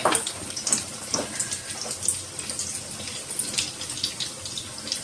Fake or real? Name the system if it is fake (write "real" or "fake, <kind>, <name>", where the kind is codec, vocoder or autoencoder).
real